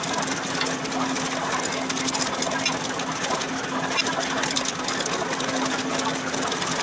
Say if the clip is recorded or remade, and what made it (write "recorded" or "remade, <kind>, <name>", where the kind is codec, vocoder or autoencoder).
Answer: recorded